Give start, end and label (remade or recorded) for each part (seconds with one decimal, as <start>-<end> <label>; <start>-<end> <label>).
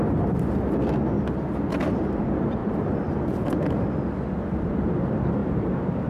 0.0-2.6 recorded; 2.6-3.5 remade; 3.5-5.4 recorded; 5.4-6.1 remade